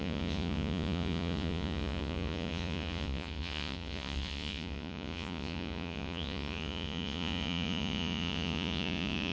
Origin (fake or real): fake